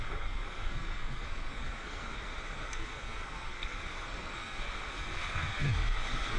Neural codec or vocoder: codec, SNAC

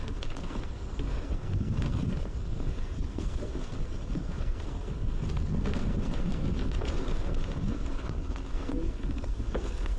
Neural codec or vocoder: codec, SNAC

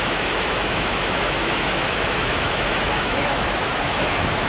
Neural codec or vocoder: autoencoder, DAC-VAE